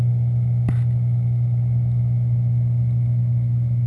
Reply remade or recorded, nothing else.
recorded